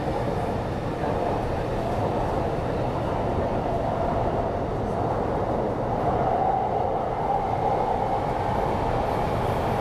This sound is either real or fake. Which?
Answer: real